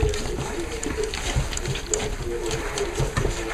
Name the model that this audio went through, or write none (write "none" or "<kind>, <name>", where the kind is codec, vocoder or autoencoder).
none